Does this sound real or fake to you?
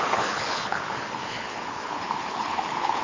fake